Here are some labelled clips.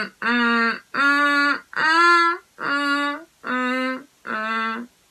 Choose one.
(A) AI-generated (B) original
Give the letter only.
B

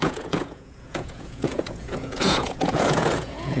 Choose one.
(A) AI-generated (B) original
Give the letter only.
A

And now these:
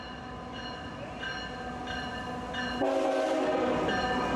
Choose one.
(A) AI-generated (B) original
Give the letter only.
B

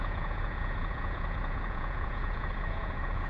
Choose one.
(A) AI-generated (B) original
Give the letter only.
A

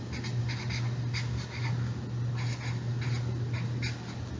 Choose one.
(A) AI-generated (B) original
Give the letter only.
B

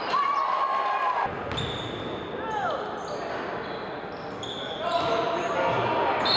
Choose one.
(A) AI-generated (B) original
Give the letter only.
B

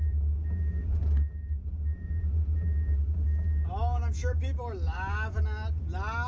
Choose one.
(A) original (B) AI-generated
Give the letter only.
A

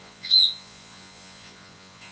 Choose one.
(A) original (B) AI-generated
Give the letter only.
B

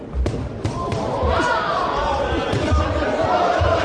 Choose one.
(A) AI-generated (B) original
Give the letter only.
B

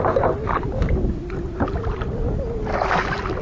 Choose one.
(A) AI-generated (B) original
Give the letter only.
B